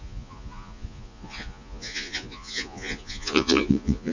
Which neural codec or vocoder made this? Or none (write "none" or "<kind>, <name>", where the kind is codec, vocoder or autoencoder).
vocoder, Vocos